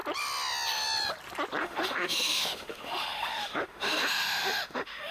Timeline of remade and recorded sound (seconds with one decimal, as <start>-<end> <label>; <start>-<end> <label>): 0.0-1.6 recorded; 1.6-5.1 remade